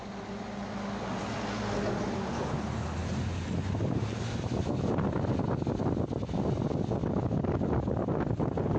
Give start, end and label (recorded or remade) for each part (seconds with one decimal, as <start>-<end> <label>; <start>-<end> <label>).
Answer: 0.0-8.8 recorded